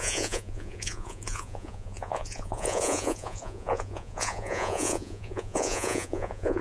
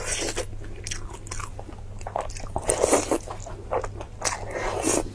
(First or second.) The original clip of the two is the second